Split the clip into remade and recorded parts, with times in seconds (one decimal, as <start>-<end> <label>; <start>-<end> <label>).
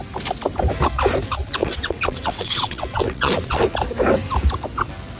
0.0-1.6 recorded; 1.6-3.6 remade; 3.6-5.2 recorded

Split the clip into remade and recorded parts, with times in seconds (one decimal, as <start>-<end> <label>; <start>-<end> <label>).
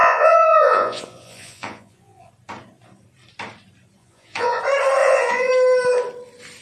0.0-2.3 remade; 2.3-4.0 recorded; 4.0-4.6 remade; 4.6-5.0 recorded; 5.0-5.5 remade; 5.5-6.6 recorded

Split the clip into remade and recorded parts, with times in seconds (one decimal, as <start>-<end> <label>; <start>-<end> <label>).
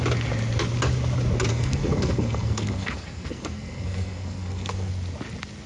0.0-1.5 recorded; 1.5-4.9 remade; 4.9-5.7 recorded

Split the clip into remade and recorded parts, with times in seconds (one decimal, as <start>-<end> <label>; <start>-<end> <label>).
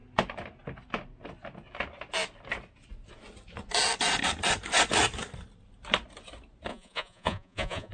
0.0-6.7 recorded; 6.7-7.9 remade